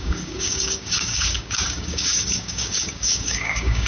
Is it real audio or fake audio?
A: fake